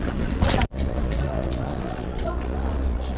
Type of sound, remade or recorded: remade